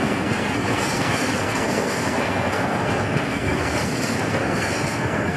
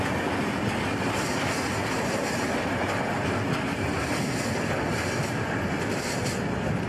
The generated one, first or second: first